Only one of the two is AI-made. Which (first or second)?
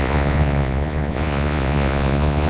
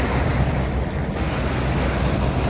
first